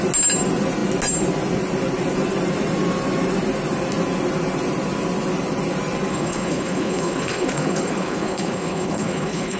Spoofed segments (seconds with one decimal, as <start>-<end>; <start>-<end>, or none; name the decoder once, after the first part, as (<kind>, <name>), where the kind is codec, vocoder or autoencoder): 6.1-9.6 (codec, HILCodec)